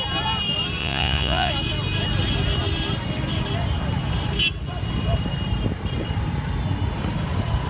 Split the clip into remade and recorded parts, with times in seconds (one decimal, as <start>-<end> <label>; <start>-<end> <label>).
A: 0.0-0.8 recorded; 0.8-1.5 remade; 1.5-7.7 recorded